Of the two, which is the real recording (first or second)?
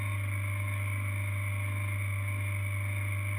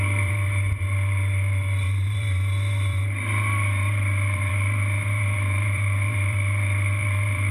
first